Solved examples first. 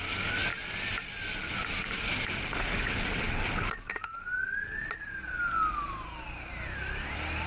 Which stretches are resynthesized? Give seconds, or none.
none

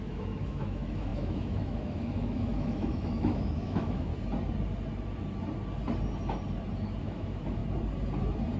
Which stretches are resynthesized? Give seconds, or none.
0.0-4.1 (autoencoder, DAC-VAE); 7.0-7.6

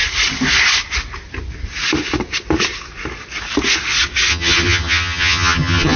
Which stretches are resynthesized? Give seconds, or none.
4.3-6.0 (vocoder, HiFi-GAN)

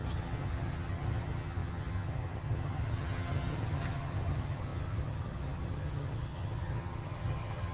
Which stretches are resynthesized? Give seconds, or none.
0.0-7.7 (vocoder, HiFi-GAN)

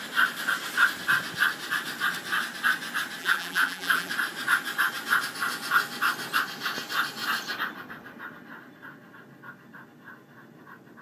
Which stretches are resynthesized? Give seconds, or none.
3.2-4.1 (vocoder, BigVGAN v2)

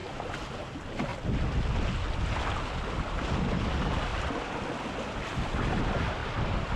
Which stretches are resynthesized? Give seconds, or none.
none

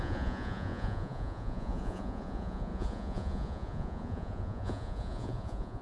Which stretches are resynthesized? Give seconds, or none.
0.0-5.8 (vocoder, Vocos)